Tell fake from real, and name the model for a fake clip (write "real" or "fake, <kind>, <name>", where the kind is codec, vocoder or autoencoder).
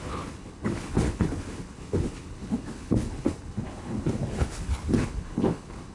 fake, codec, HILCodec